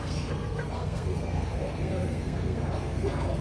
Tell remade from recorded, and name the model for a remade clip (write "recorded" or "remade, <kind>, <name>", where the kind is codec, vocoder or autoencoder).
remade, codec, SNAC